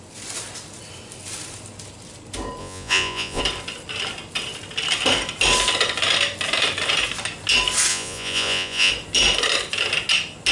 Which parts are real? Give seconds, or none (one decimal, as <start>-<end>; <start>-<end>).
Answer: 0.0-2.6; 3.4-7.9; 8.9-10.5